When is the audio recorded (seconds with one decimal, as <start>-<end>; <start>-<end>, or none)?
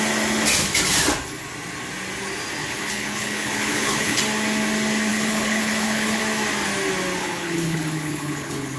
0.0-2.6; 4.2-5.1; 6.2-7.2